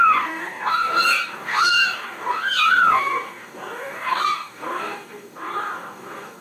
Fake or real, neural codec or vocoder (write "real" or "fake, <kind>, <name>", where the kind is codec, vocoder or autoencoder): fake, codec, DAC